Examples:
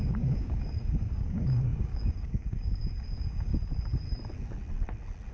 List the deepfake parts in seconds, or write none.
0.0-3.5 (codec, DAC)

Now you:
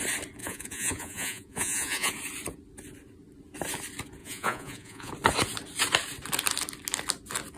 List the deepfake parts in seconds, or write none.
0.4-2.1 (vocoder, Vocos); 4.2-5.1

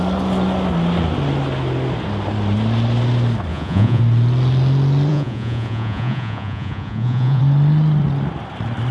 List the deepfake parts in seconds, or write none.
3.5-4.0 (vocoder, Vocos); 5.1-7.4

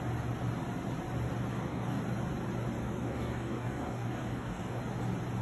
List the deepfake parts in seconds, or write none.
1.5-2.0 (codec, DAC); 2.8-4.8

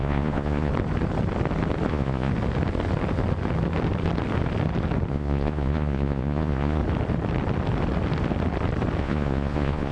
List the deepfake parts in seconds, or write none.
0.0-0.7 (vocoder, Vocos); 1.9-2.3; 5.1-6.8; 9.0-9.9

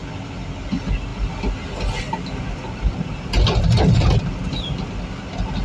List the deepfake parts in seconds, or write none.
none

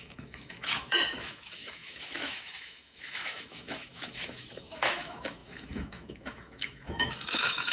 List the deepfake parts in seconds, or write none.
0.0-7.7 (autoencoder, DAC-VAE)